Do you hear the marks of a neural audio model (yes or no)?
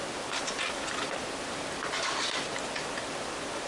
no